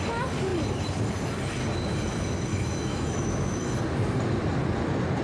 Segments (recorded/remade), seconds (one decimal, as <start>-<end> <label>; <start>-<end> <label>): 0.0-2.5 recorded; 2.5-3.7 remade; 3.7-5.2 recorded